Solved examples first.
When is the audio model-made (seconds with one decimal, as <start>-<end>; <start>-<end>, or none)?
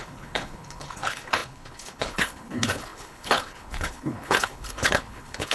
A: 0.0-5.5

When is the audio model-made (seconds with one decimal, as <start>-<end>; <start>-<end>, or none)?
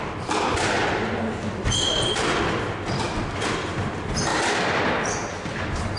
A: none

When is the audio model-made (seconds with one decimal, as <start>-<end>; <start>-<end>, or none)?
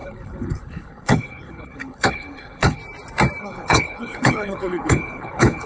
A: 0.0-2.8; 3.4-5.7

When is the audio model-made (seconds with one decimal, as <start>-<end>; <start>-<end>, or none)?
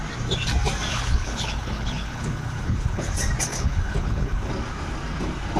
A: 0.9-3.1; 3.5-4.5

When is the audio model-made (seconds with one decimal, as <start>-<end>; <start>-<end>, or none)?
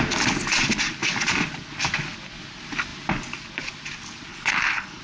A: 4.3-5.0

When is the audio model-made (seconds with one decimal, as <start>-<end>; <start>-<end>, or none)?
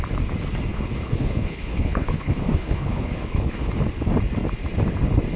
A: 0.7-3.7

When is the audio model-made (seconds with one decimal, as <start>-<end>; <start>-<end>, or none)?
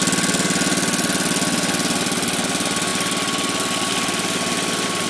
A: none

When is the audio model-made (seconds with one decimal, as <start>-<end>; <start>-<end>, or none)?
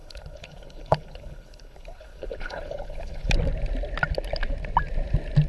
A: 0.0-3.3